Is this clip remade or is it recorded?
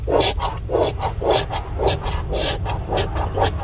recorded